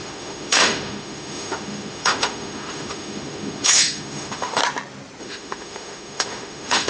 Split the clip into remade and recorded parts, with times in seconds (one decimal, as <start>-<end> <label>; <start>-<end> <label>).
0.0-4.6 remade; 4.6-5.2 recorded; 5.2-6.9 remade